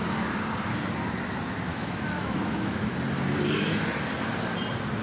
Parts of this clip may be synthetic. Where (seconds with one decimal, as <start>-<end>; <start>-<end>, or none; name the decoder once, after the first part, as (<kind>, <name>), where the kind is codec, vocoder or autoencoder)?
1.7-2.9 (autoencoder, DAC-VAE)